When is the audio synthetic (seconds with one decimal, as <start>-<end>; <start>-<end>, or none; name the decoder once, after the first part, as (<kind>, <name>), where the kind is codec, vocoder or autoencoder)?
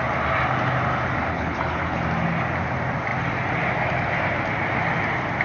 1.3-2.0 (codec, HILCodec)